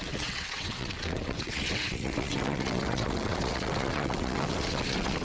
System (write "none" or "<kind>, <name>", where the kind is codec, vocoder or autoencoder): vocoder, WaveNeXt